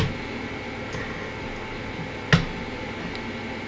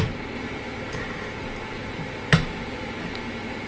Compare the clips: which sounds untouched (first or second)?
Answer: first